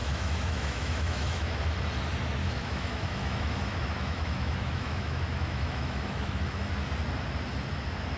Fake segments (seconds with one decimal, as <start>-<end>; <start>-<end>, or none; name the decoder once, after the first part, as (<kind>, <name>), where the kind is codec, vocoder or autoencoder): 0.0-1.6 (autoencoder, DAC-VAE); 2.4-6.7